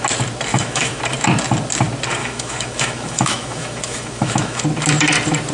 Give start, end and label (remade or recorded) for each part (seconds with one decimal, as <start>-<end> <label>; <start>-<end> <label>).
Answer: 0.0-0.5 recorded; 0.5-1.0 remade; 1.0-2.2 recorded; 2.2-4.6 remade; 4.6-5.5 recorded